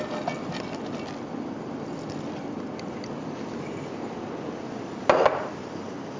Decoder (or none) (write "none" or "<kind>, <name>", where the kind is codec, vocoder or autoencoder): none